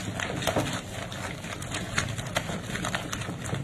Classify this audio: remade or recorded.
recorded